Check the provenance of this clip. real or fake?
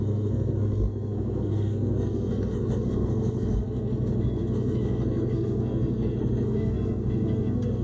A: fake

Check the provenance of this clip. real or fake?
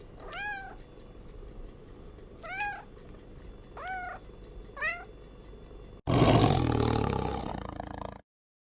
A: real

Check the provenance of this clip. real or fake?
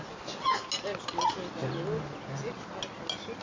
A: real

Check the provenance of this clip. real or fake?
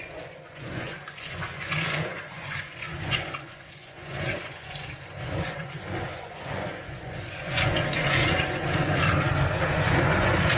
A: fake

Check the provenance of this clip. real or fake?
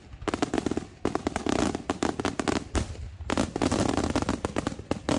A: real